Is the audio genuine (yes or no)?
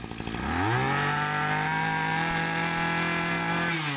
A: yes